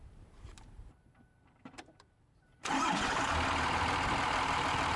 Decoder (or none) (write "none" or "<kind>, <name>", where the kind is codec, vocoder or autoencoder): vocoder, BigVGAN v2